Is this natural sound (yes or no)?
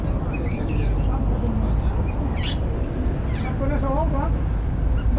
yes